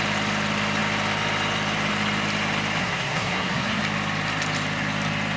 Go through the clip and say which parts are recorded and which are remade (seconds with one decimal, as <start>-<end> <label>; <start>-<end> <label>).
0.0-2.8 recorded; 2.8-3.8 remade; 3.8-5.4 recorded